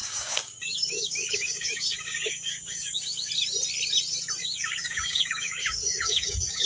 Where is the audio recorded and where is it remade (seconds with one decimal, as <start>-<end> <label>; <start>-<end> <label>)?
0.0-3.3 remade; 3.3-4.4 recorded; 4.4-6.7 remade